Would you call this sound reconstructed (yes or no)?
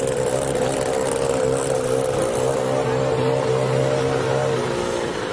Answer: no